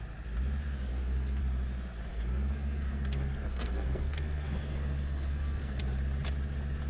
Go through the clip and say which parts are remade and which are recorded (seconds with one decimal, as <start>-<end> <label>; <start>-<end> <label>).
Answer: 0.0-0.9 recorded; 0.9-1.4 remade; 1.4-2.1 recorded; 2.1-5.8 remade; 5.8-6.9 recorded